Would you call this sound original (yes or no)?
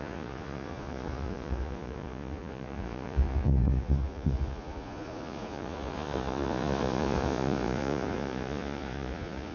no